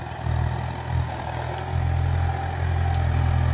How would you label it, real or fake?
real